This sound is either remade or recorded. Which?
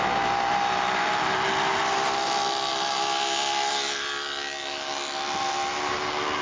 recorded